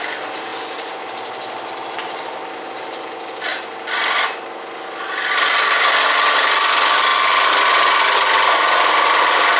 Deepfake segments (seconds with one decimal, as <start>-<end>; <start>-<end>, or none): none